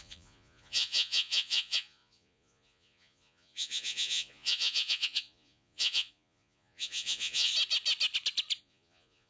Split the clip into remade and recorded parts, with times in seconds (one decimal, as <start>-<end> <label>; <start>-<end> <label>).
0.0-7.5 remade; 7.5-8.6 recorded; 8.6-9.3 remade